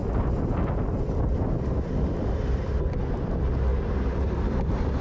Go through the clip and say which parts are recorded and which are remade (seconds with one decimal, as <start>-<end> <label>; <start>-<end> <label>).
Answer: 0.0-2.7 remade; 2.7-5.0 recorded